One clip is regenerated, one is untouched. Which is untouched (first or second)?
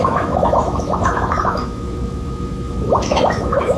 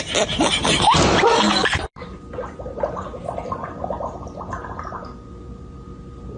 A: second